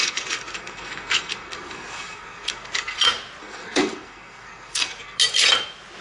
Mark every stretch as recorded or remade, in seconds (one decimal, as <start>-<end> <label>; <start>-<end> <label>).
0.0-3.0 remade; 3.0-3.4 recorded; 3.4-5.2 remade; 5.2-6.0 recorded